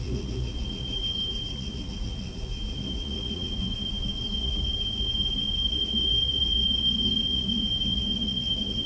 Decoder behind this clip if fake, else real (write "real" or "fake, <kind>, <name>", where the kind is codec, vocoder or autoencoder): fake, vocoder, Vocos